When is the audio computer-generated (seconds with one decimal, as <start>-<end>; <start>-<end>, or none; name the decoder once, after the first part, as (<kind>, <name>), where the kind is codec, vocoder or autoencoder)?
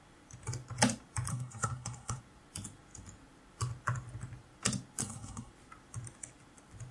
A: 1.3-2.2 (codec, SNAC); 5.0-5.5